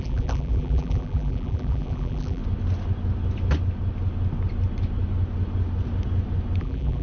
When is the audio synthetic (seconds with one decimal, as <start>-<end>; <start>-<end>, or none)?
0.0-2.4; 6.6-7.0